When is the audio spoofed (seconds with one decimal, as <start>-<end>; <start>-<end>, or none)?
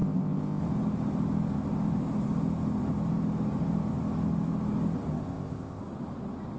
0.0-0.6; 5.2-5.8